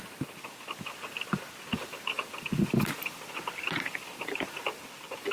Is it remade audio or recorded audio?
recorded